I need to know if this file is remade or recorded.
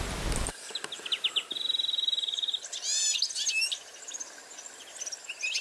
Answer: recorded